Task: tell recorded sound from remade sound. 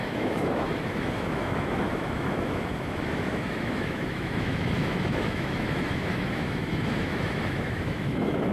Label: remade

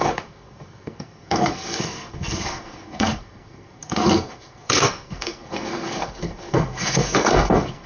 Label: remade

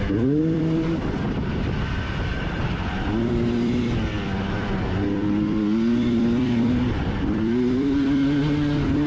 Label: remade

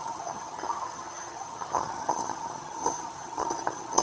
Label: remade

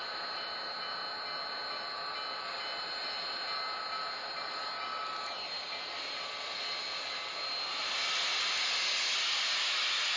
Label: recorded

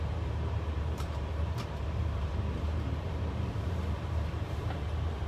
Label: remade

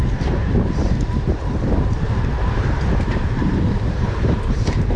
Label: remade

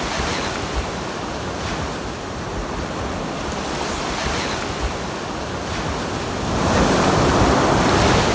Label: recorded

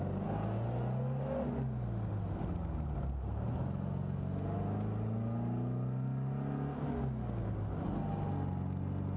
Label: recorded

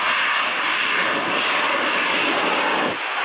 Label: recorded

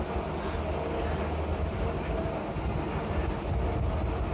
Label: recorded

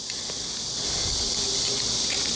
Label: recorded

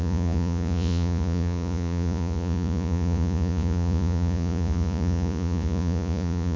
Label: remade